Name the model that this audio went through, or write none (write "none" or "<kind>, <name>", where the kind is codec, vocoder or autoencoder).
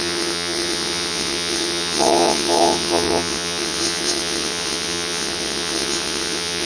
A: vocoder, WaveNeXt